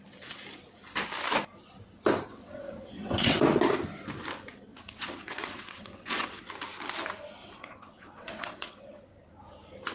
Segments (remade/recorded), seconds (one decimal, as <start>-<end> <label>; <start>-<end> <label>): 0.0-2.3 recorded; 2.3-3.4 remade; 3.4-4.7 recorded; 4.7-6.5 remade; 6.5-7.4 recorded; 7.4-9.0 remade; 9.0-9.9 recorded